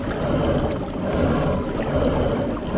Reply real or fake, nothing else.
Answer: real